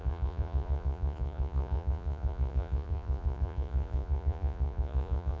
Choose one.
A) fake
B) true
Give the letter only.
A